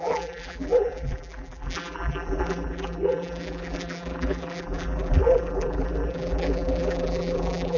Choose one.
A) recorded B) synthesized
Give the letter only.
B